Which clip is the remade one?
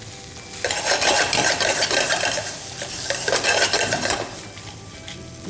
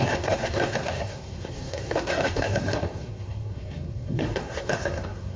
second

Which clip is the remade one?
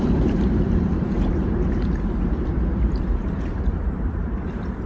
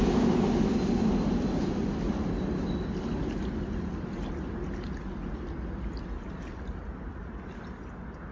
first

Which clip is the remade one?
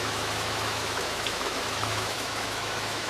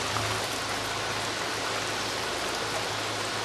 first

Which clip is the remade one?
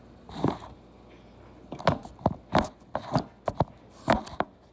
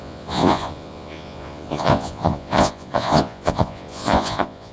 second